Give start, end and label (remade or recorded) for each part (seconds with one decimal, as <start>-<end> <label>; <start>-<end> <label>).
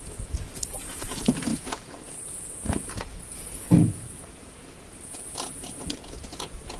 0.0-6.8 remade